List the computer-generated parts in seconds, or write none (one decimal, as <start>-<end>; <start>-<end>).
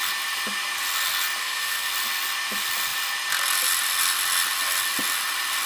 1.4-1.9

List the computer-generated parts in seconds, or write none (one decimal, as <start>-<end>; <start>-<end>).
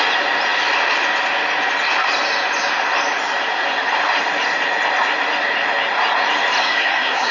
6.6-7.3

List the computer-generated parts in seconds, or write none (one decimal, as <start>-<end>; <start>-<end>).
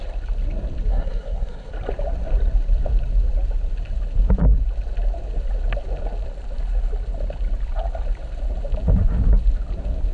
0.9-1.7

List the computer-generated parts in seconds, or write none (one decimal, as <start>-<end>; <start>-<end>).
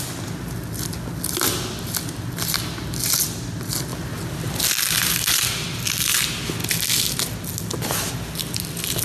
none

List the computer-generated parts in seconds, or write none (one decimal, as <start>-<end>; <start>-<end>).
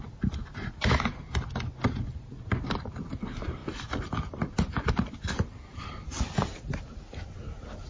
none